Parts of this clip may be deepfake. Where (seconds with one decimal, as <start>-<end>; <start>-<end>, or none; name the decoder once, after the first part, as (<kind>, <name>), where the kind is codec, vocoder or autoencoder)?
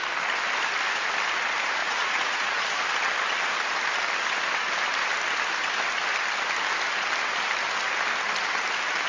1.8-2.8 (vocoder, Vocos)